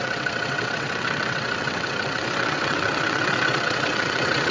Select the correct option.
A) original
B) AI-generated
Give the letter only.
B